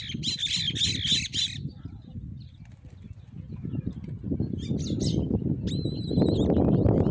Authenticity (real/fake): real